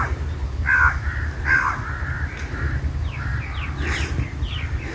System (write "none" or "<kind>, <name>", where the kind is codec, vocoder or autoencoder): none